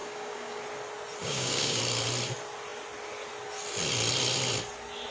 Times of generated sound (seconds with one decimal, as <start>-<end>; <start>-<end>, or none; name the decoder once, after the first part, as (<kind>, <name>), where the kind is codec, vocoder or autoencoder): 0.0-0.6 (codec, DAC); 1.2-1.8